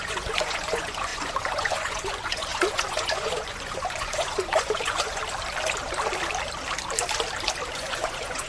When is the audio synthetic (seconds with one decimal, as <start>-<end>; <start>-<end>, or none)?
0.0-5.2; 7.7-8.5